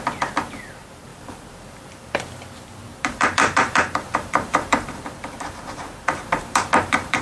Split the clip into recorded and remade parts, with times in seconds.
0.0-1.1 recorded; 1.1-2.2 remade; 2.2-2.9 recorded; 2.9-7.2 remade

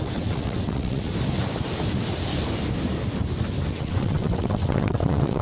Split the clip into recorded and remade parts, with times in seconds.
0.0-1.1 remade; 1.1-3.7 recorded; 3.7-5.4 remade

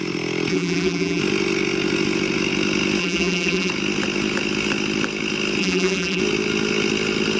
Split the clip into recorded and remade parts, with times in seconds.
0.0-0.5 recorded; 0.5-1.2 remade; 1.2-3.0 recorded; 3.0-3.7 remade; 3.7-5.6 recorded; 5.6-6.2 remade; 6.2-7.4 recorded

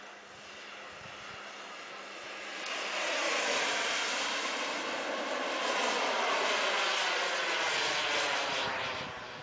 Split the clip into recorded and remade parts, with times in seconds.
0.0-9.4 recorded

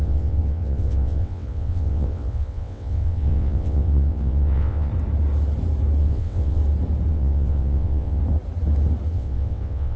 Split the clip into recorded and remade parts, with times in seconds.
0.0-4.9 remade; 4.9-6.0 recorded; 6.0-6.6 remade; 6.6-7.1 recorded; 7.1-8.2 remade; 8.2-9.1 recorded; 9.1-10.0 remade

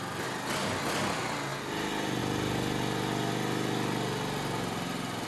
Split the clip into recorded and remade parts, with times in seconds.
0.0-5.3 recorded

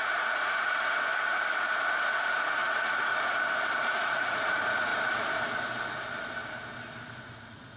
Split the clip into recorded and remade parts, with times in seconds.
0.0-1.1 remade; 1.1-2.5 recorded; 2.5-3.1 remade; 3.1-3.8 recorded; 3.8-4.9 remade; 4.9-7.2 recorded; 7.2-7.8 remade

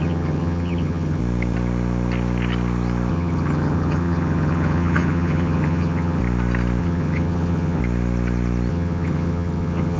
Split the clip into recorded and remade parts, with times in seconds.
0.0-1.2 remade; 1.2-3.1 recorded; 3.1-6.2 remade; 6.2-6.8 recorded; 6.8-7.8 remade; 7.8-8.7 recorded; 8.7-10.0 remade